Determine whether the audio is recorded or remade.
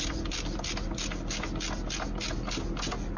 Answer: recorded